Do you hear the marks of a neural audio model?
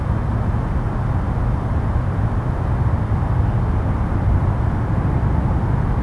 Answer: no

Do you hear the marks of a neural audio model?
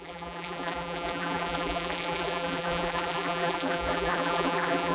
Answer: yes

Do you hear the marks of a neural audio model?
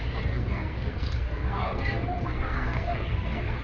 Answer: yes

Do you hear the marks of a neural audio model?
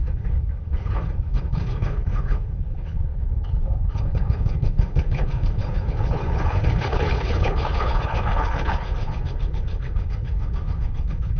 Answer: yes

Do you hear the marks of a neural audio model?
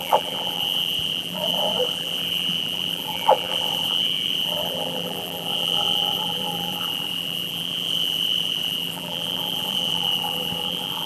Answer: yes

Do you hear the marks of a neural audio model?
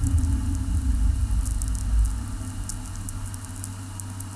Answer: no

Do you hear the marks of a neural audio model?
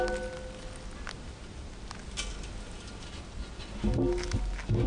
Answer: no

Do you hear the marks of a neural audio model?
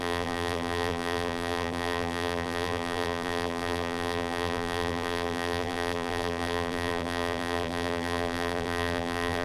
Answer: yes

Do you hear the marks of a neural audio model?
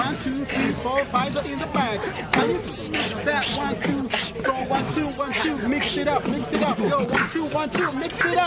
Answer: no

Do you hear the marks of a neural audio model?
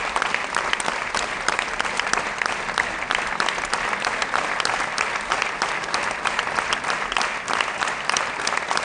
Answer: no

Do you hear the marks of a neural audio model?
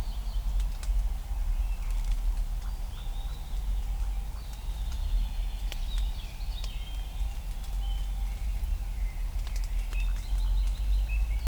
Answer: no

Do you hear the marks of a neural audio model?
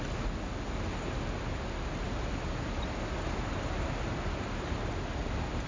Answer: no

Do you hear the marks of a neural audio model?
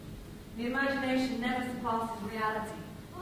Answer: no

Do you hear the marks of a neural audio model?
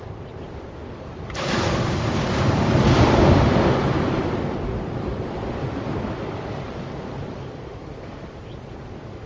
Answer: yes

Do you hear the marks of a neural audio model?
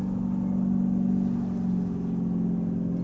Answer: no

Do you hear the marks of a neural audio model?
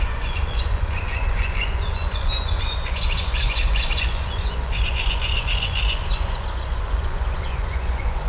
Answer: yes